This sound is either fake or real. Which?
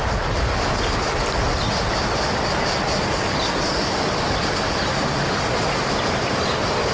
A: real